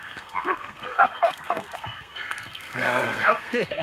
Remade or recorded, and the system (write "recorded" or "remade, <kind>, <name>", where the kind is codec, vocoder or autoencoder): remade, codec, SNAC